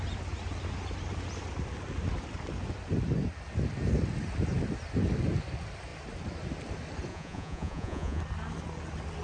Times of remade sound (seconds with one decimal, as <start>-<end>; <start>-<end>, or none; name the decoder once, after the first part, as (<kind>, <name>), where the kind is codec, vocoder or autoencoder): 7.1-8.2 (vocoder, Vocos)